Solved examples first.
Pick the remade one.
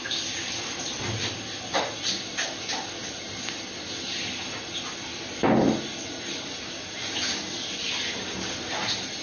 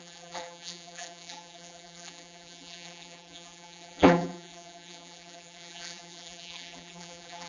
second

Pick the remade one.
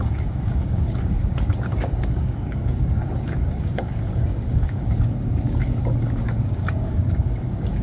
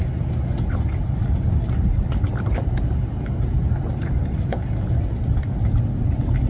first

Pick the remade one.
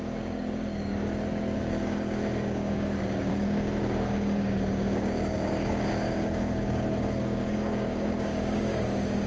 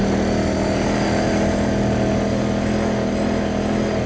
first